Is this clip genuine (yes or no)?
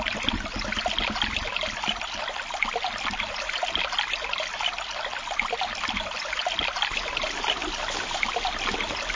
yes